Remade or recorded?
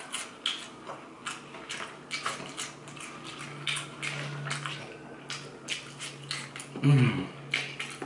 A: recorded